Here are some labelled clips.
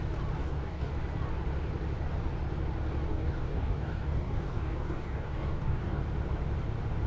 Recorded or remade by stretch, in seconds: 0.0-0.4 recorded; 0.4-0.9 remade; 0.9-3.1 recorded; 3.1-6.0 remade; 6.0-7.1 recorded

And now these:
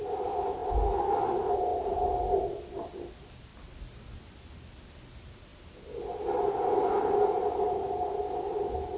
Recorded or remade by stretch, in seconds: 0.0-9.0 recorded

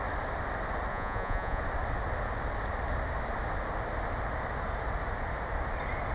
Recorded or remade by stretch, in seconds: 0.0-0.9 recorded; 0.9-1.6 remade; 1.6-6.1 recorded